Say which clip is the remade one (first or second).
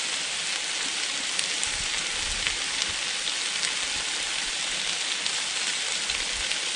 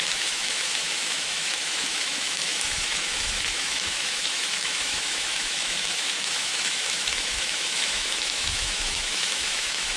second